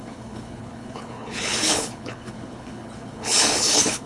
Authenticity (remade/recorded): remade